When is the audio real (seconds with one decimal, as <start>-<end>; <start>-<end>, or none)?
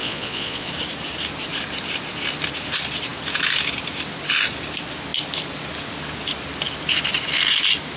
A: 0.7-8.0